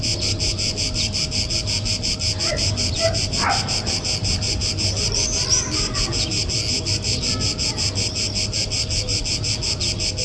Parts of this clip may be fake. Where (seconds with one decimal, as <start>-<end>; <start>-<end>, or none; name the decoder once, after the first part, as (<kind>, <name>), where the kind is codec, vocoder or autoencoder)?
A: none